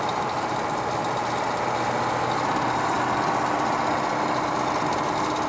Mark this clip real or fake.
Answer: real